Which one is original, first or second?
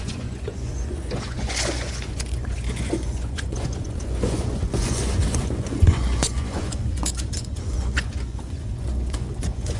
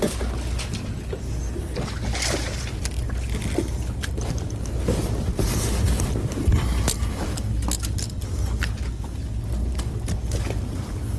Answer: second